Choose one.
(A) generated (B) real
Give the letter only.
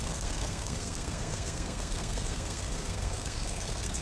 A